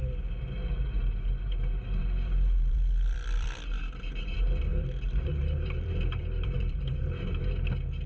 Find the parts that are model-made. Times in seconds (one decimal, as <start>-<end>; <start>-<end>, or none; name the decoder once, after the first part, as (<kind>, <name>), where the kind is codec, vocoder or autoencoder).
2.0-3.8 (vocoder, BigVGAN v2); 4.7-7.5